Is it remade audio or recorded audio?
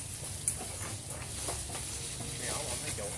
recorded